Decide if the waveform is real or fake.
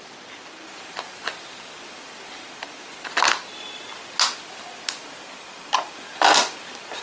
real